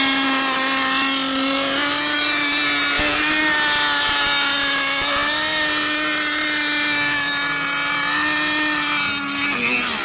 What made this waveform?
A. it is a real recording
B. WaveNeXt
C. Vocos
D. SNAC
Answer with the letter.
A